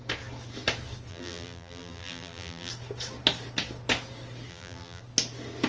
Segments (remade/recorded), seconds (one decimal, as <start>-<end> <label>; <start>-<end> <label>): 0.0-1.1 recorded; 1.1-2.7 remade; 2.7-4.5 recorded; 4.5-5.0 remade; 5.0-5.7 recorded